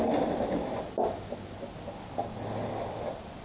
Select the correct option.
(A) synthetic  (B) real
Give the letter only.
B